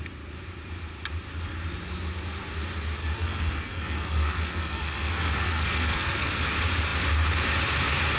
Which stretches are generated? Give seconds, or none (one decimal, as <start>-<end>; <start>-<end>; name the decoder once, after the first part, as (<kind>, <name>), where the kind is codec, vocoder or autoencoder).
3.0-6.4 (codec, SNAC)